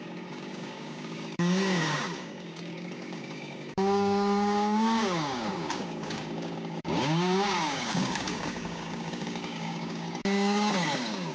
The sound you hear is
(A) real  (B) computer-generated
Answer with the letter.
B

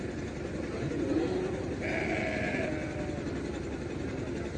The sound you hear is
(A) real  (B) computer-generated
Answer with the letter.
A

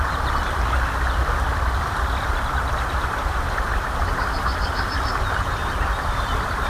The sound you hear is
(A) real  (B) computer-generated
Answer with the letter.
B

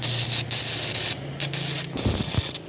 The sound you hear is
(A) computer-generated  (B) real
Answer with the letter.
B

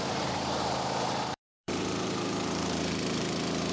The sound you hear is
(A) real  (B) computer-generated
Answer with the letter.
B